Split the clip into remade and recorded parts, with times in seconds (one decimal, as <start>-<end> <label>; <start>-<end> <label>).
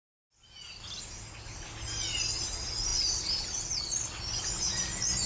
0.0-5.3 recorded